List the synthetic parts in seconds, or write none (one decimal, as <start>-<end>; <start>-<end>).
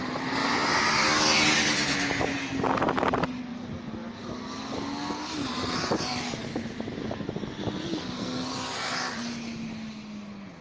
8.0-8.5